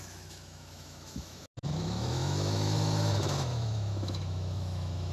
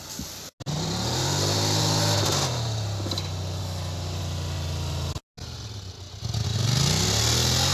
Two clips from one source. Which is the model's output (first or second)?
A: first